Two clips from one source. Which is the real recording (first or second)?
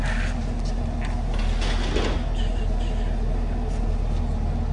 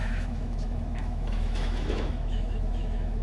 first